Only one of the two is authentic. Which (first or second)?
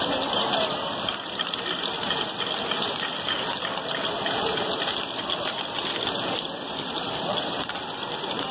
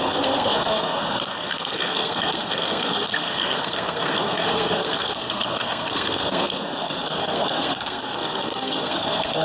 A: first